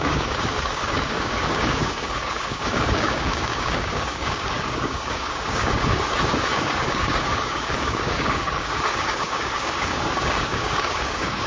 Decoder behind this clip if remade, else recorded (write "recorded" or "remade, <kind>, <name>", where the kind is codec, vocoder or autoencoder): remade, codec, DAC